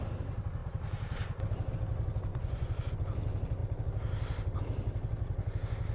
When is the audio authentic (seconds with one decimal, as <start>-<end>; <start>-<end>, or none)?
0.0-2.3; 2.9-5.9

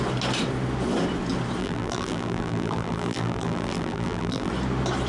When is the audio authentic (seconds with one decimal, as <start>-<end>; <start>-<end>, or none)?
0.0-1.6; 4.5-5.1

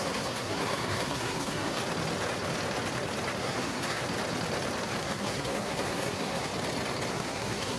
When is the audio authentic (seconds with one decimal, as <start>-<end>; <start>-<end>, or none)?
1.8-3.4; 4.0-5.0; 6.5-7.1

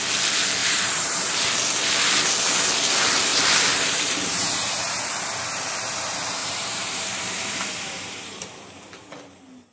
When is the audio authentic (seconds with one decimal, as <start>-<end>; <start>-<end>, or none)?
0.0-0.6; 1.3-3.3; 5.0-6.4; 9.1-9.7

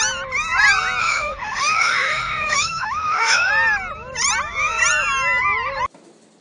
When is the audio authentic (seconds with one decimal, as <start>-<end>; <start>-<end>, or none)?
0.0-1.0; 3.5-6.4

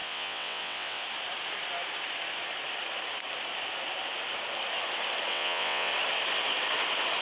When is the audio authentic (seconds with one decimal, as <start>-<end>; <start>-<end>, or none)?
1.0-5.3; 5.9-7.2

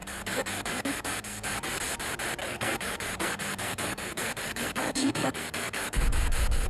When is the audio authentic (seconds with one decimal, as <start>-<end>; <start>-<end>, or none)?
1.8-2.4

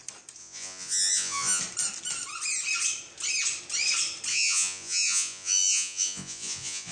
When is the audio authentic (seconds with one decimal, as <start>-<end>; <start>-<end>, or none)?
0.0-0.4; 1.6-4.3